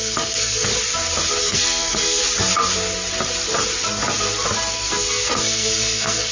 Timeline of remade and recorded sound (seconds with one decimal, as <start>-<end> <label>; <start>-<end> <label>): 0.0-0.7 remade; 0.7-1.4 recorded; 1.4-2.2 remade; 2.2-4.7 recorded; 4.7-6.3 remade